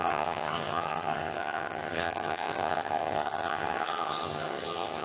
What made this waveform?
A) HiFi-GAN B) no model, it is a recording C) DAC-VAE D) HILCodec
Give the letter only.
A